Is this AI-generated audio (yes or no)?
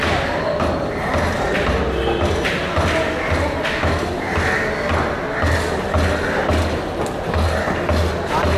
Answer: no